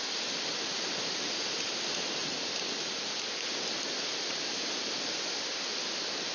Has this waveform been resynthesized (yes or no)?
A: no